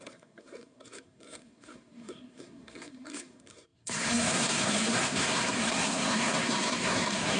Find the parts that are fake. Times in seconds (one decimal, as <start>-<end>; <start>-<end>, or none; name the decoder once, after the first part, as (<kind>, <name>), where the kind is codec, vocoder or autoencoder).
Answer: 0.0-7.4 (codec, SNAC)